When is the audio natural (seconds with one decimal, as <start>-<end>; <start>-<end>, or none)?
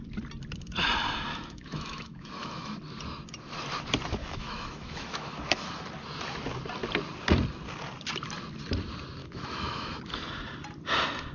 0.0-1.3; 2.8-4.2; 5.7-9.2; 10.0-11.3